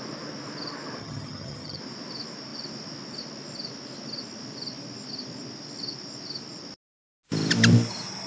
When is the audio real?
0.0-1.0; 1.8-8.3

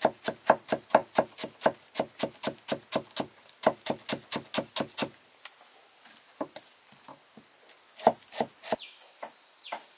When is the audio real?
0.0-10.0

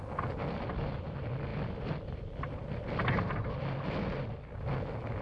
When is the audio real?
0.0-5.2

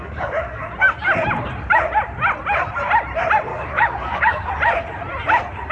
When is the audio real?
0.7-3.5; 4.5-5.7

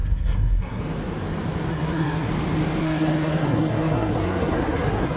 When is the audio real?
0.8-1.7; 2.3-2.8